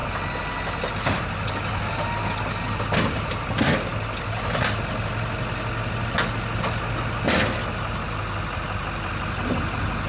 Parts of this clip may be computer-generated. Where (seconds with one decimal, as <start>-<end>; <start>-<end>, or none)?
none